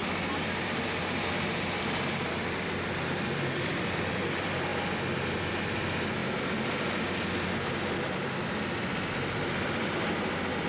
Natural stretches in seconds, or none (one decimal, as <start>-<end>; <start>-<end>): 4.7-5.5; 6.2-10.1